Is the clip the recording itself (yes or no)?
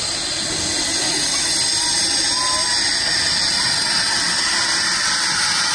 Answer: yes